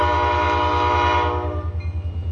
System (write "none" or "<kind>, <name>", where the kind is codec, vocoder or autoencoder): none